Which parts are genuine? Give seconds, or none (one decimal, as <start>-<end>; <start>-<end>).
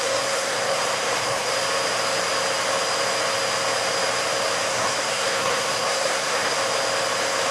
1.5-4.7; 6.6-7.5